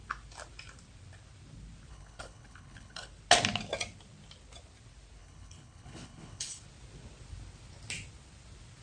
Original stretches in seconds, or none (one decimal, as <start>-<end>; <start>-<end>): 0.0-1.9; 3.1-5.2; 6.6-8.8